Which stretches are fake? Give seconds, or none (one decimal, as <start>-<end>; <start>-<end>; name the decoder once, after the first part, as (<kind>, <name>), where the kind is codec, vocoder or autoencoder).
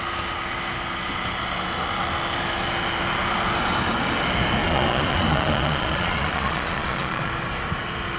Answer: 4.6-7.3 (vocoder, Vocos)